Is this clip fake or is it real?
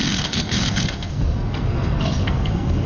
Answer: fake